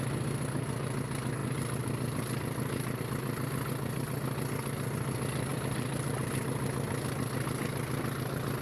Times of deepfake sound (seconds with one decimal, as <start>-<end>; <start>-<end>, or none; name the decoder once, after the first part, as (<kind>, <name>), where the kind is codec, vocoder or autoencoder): 1.4-3.0 (vocoder, BigVGAN v2); 5.5-6.2